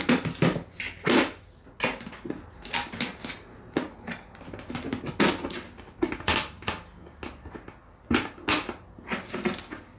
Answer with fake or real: real